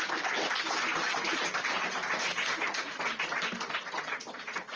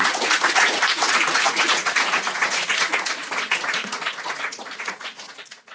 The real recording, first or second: first